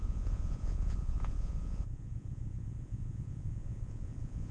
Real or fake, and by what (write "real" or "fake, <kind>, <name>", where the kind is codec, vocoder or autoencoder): fake, vocoder, Vocos